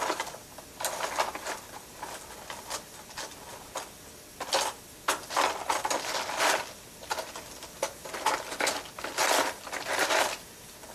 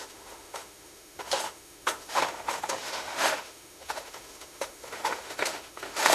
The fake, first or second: second